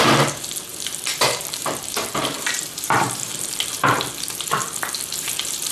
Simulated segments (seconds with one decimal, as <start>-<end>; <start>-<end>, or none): 0.7-4.1